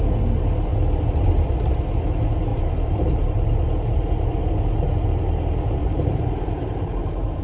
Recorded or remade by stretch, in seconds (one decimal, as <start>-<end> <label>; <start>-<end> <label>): 0.0-2.5 recorded; 2.5-4.4 remade; 4.4-5.8 recorded; 5.8-7.4 remade